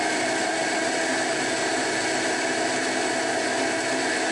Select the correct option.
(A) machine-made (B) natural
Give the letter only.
B